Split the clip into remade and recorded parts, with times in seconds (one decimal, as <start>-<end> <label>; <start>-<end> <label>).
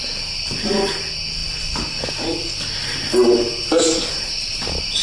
0.0-5.0 recorded